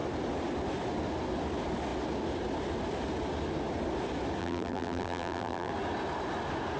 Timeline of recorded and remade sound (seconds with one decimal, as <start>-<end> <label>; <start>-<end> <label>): 0.0-4.4 recorded; 4.4-5.7 remade; 5.7-6.8 recorded